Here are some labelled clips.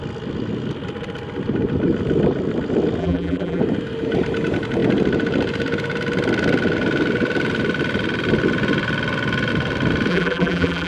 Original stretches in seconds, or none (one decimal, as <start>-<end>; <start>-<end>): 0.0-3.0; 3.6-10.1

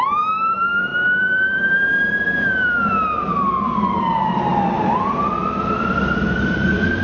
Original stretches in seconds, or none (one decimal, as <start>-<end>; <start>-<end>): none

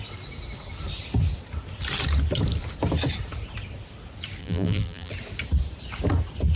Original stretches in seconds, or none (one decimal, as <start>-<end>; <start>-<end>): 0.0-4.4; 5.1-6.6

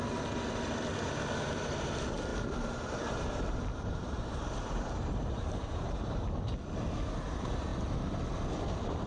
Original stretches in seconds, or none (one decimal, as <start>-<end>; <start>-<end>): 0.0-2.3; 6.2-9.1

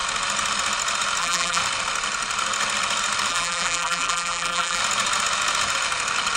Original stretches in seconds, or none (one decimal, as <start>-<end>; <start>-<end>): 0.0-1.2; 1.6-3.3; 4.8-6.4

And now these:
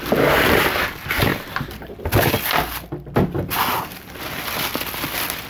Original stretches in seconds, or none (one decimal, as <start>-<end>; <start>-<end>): none

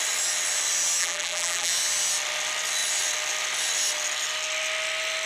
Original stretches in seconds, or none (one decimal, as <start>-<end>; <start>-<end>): 0.0-1.0; 1.7-5.3